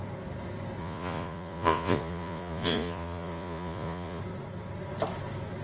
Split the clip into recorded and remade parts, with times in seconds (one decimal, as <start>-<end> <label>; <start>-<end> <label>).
0.0-0.8 recorded; 0.8-4.2 remade; 4.2-5.6 recorded